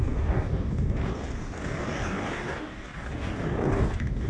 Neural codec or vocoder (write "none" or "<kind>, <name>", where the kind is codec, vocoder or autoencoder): codec, DAC